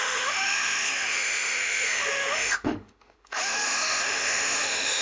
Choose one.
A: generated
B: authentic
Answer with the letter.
A